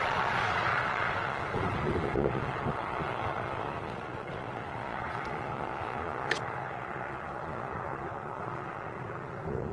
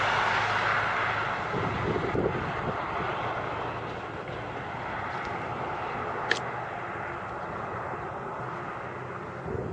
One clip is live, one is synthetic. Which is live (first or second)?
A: second